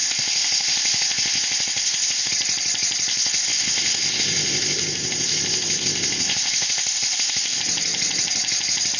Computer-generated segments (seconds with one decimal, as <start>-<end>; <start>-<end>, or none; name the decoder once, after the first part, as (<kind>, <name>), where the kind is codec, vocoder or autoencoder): 0.0-2.3 (codec, ZipCodec); 3.1-7.6